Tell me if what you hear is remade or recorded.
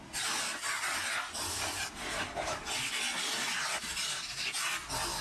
recorded